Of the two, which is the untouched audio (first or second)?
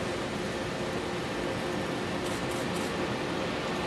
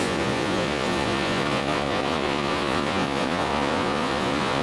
first